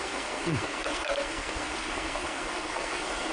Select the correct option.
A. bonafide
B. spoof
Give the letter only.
B